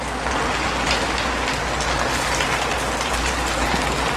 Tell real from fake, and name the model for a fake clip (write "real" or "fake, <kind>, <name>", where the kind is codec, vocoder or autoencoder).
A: real